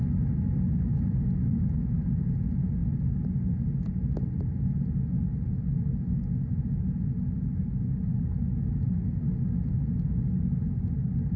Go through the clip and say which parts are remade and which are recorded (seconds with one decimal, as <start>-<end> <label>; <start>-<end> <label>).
0.0-11.4 recorded